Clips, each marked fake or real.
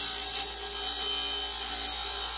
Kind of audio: real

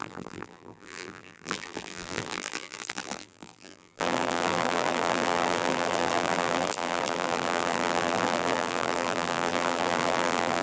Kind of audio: fake